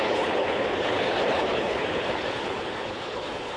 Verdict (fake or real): fake